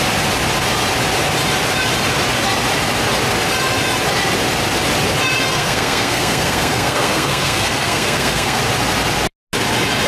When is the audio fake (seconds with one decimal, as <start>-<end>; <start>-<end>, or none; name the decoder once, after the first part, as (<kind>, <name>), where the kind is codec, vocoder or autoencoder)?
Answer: 5.5-8.6 (codec, SNAC)